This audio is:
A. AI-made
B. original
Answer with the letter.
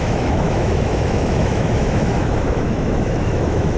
A